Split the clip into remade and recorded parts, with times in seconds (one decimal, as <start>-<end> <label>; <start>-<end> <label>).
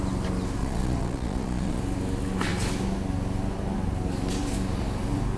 0.0-0.6 recorded; 0.6-1.8 remade; 1.8-5.4 recorded